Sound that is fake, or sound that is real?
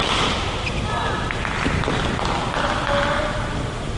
real